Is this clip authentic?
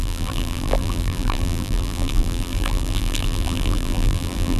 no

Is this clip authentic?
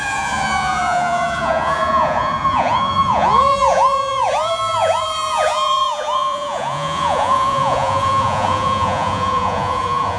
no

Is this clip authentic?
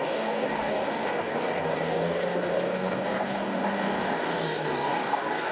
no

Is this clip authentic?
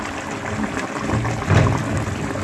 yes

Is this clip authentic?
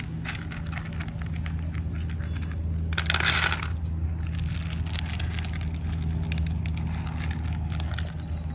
yes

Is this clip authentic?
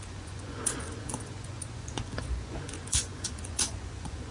no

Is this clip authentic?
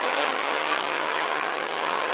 no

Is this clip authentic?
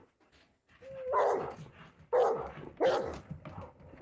yes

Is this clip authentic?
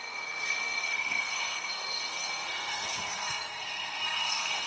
no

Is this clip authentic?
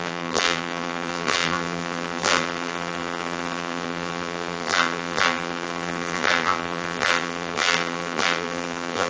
no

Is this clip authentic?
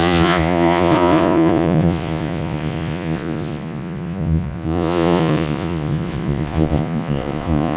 no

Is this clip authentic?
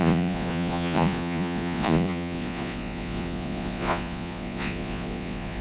no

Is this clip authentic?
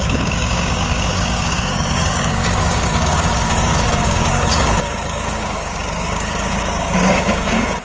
no